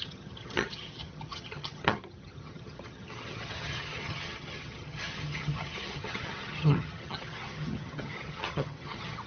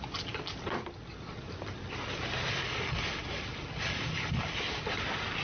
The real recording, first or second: second